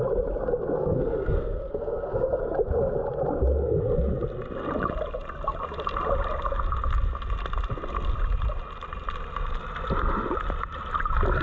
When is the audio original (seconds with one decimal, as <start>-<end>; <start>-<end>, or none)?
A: 0.0-0.8; 2.4-11.4

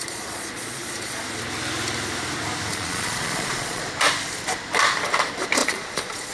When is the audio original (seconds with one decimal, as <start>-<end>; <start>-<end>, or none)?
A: 1.2-2.7; 3.8-5.6

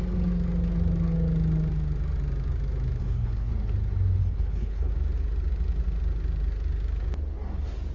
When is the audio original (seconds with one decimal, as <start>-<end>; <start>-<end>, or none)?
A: 0.0-3.0; 3.5-4.2; 4.9-7.9